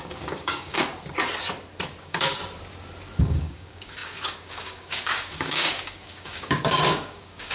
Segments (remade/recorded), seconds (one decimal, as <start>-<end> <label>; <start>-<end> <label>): 0.0-0.9 remade; 0.9-2.0 recorded; 2.0-2.4 remade; 2.4-3.2 recorded; 3.2-7.5 remade

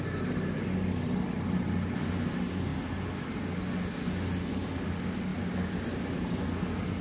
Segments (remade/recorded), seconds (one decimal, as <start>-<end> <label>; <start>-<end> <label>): 0.0-5.3 recorded; 5.3-6.4 remade; 6.4-7.0 recorded

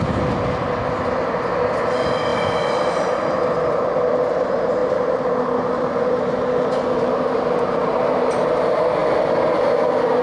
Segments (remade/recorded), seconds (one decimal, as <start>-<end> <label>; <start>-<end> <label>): 0.0-4.8 recorded; 4.8-8.5 remade; 8.5-9.0 recorded; 9.0-9.6 remade; 9.6-10.2 recorded

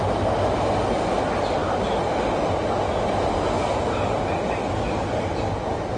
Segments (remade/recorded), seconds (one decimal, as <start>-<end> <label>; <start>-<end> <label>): 0.0-6.0 recorded

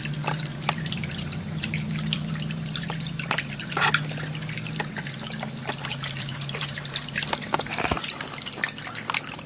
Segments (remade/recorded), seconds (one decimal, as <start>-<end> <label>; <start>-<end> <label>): 0.0-0.5 recorded; 0.5-3.5 remade; 3.5-5.8 recorded; 5.8-8.2 remade; 8.2-9.5 recorded